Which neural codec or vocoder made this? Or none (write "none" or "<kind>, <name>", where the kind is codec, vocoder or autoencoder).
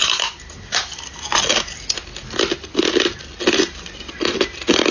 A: none